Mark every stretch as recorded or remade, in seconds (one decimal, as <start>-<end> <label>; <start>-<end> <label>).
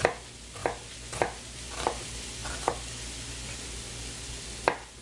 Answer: 0.0-5.0 recorded